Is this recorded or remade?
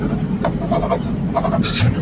remade